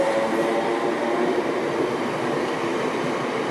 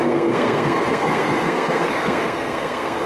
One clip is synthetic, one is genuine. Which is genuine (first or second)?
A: first